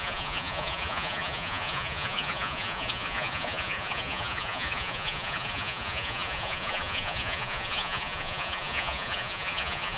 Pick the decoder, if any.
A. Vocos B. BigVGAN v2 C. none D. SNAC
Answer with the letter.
A